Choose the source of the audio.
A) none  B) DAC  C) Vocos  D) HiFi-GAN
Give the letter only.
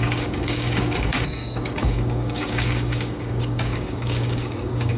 B